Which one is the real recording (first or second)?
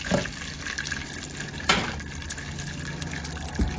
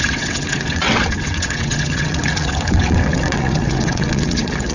first